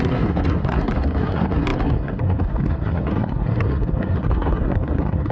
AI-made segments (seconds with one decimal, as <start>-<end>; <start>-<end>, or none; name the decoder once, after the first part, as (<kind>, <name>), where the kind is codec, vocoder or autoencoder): 0.0-5.3 (codec, SNAC)

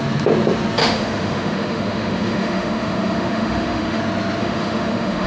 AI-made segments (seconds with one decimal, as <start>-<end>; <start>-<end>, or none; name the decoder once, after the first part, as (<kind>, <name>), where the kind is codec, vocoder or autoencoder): 0.8-4.0 (autoencoder, DAC-VAE); 4.4-5.3

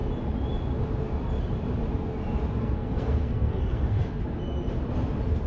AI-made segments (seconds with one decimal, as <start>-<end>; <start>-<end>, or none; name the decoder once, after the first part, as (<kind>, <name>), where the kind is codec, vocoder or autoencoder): 2.6-4.2 (codec, SNAC)

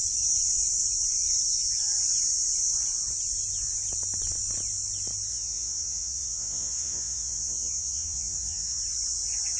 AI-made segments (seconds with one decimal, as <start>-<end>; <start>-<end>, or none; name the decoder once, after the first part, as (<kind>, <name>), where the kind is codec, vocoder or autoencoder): 5.3-8.8 (vocoder, Vocos)

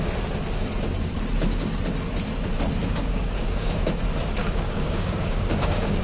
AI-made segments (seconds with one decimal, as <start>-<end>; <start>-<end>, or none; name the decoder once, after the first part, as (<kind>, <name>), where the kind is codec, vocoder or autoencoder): 2.8-3.9 (codec, DAC); 4.4-6.0

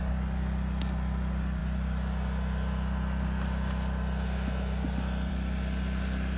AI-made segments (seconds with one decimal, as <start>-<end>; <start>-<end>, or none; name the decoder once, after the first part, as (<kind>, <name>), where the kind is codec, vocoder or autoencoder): none

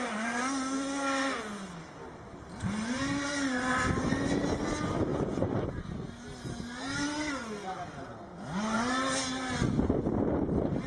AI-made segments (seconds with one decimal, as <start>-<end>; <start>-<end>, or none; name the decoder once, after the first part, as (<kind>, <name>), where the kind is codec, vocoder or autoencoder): 5.1-5.8 (vocoder, Vocos)